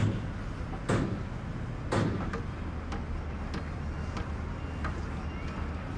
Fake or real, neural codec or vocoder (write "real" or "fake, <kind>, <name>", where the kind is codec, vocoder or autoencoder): real